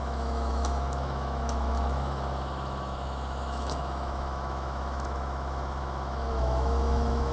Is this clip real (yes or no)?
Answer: no